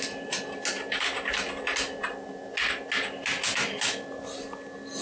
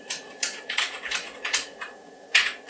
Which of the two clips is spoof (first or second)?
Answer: second